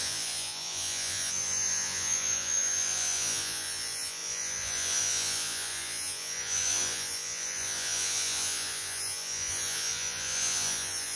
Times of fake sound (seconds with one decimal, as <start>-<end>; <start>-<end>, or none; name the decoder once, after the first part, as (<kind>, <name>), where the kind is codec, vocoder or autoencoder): 0.0-11.2 (vocoder, Vocos)